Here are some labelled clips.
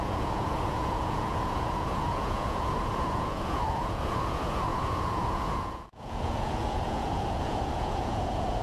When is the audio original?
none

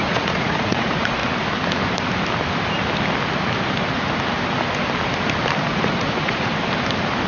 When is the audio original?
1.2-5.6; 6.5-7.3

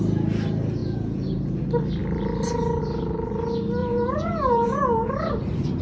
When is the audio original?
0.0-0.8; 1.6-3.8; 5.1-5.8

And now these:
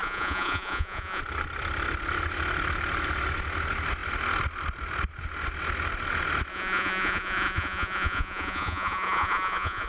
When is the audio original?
1.2-6.5

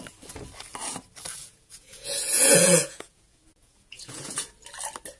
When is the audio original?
0.0-1.4; 4.5-5.2

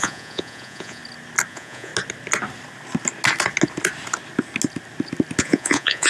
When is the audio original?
1.0-1.5; 1.9-5.4

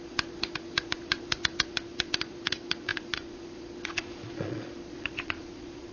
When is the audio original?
none

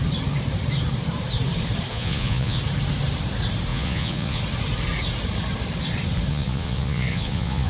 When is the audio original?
0.0-1.9; 2.6-3.7; 4.4-6.3